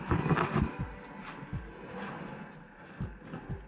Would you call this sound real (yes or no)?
yes